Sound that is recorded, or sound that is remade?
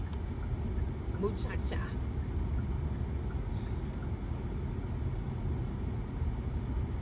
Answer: recorded